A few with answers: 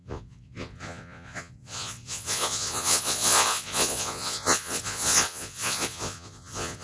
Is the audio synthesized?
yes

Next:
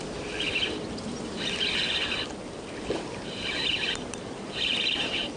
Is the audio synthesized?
no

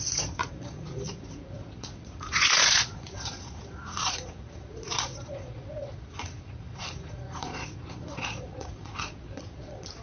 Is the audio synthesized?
yes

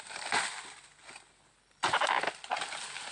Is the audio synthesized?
no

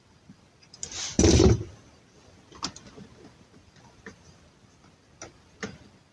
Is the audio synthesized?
no